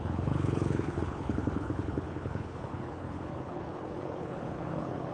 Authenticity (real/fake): fake